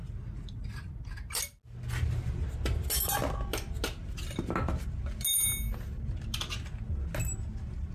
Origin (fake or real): real